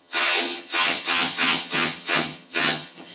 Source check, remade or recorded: remade